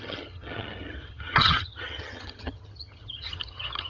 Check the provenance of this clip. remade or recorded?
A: remade